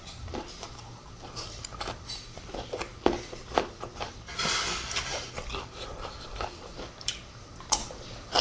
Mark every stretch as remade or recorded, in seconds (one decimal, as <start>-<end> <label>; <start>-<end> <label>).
0.0-8.4 remade